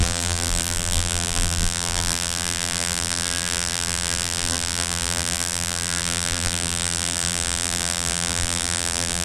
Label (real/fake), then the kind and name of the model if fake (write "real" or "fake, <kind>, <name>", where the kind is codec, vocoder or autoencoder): fake, vocoder, BigVGAN v2